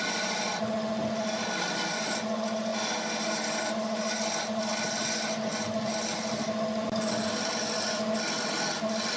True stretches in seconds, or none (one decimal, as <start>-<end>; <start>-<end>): 0.0-9.2

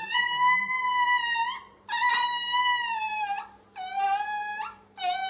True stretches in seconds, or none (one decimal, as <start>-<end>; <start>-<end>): 0.0-5.3

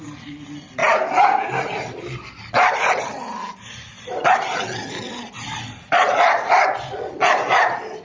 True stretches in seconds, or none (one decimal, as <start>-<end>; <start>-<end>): 0.0-8.0

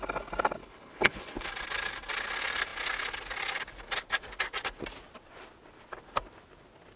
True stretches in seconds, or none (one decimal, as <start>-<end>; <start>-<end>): 0.0-0.6; 1.5-7.0

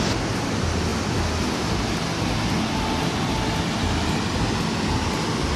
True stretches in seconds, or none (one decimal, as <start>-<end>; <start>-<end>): 0.0-5.6